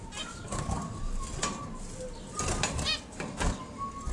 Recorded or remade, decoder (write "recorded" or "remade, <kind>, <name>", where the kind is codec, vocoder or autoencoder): recorded